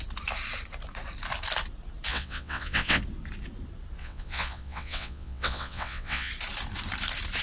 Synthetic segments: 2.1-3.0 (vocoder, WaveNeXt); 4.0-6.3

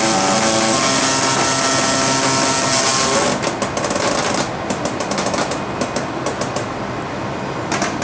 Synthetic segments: none

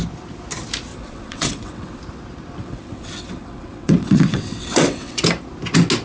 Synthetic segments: 0.9-2.0 (vocoder, WaveNeXt); 2.6-5.2

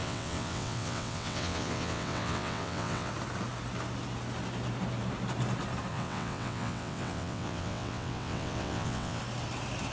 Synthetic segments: 0.0-3.1 (vocoder, WaveNeXt); 5.9-9.2